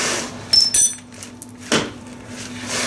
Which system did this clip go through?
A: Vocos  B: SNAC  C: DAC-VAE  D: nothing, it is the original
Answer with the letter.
D